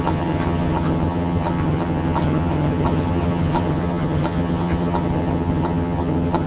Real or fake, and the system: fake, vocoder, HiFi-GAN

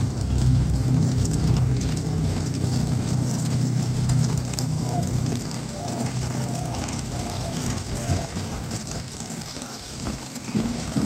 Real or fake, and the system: fake, codec, DAC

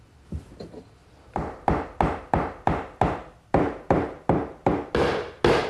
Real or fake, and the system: real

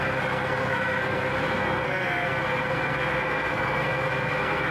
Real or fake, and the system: fake, codec, SNAC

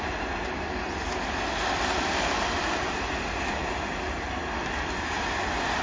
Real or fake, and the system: real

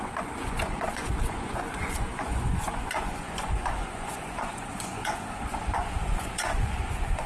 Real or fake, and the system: fake, vocoder, Vocos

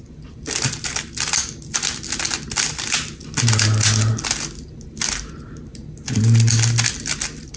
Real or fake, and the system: real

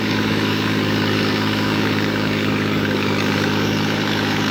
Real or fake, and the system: fake, codec, DAC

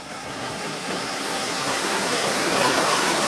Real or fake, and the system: fake, codec, SNAC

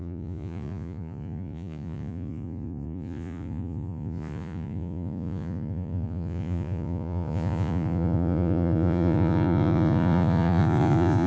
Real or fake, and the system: fake, vocoder, Vocos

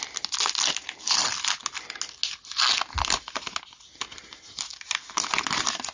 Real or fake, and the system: real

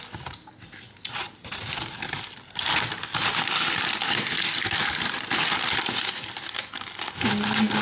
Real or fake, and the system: real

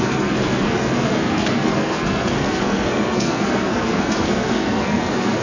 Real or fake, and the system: fake, codec, SNAC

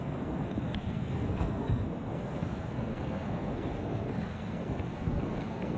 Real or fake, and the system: fake, codec, SNAC